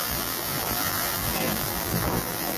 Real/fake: fake